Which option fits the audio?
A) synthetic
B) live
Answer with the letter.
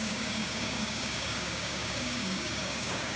A